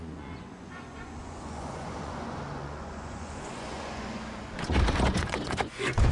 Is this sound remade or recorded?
remade